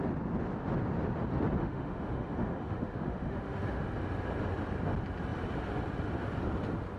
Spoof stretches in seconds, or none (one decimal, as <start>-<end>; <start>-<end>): 1.6-3.8